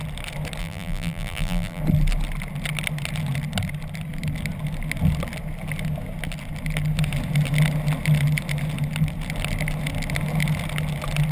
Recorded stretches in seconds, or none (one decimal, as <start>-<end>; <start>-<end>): 0.0-0.6; 1.8-11.3